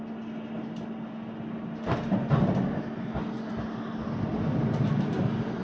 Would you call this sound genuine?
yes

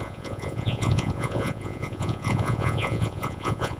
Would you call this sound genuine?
no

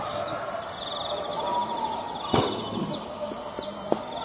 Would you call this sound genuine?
yes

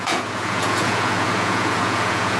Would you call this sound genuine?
no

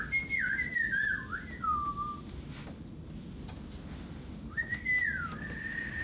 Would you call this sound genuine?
yes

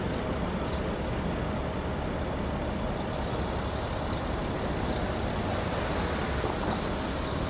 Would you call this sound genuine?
yes